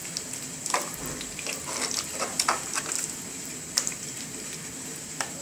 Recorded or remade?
remade